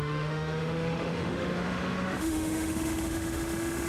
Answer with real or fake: fake